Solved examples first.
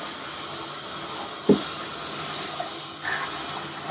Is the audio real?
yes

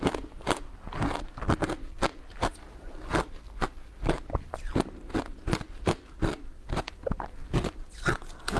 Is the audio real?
yes